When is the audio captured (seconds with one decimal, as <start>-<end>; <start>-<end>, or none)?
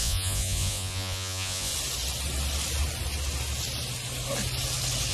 1.7-5.1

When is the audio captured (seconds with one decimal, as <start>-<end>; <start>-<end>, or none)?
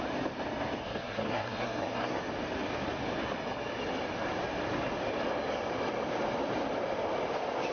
0.0-0.8; 2.2-7.7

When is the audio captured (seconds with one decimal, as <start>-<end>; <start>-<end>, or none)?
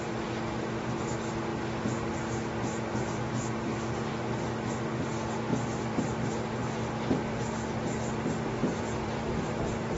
0.0-2.9; 4.5-5.5; 6.3-8.6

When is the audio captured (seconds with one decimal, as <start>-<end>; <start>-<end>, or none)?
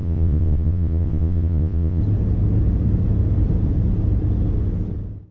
2.0-5.3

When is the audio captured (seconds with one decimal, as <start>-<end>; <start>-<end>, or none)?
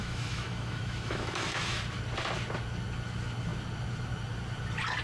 1.8-5.0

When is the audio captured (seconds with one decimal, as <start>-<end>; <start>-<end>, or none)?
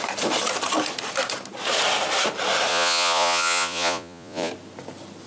0.0-2.7; 4.5-5.3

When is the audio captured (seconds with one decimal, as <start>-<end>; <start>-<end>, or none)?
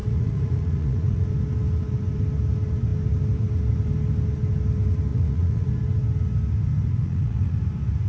1.2-5.1; 5.7-6.8; 7.6-8.1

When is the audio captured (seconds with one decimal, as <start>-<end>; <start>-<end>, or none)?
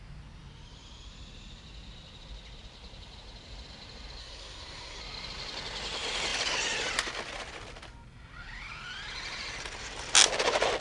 0.0-4.2; 5.0-10.8